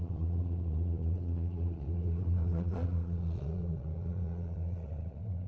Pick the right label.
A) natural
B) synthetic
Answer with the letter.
B